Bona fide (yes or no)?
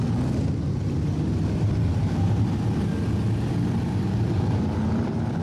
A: no